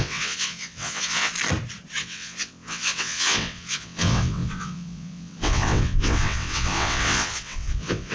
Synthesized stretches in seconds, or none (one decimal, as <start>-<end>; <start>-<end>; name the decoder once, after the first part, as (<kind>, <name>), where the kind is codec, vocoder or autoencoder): 0.0-1.3 (vocoder, WaveNeXt); 2.0-8.1